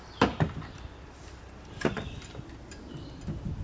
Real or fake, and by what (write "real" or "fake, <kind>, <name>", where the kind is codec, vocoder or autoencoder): real